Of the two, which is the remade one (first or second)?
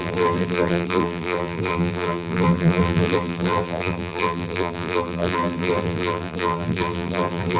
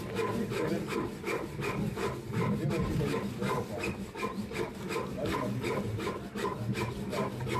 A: first